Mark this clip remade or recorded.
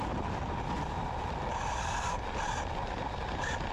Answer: recorded